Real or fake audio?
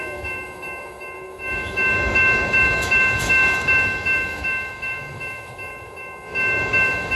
fake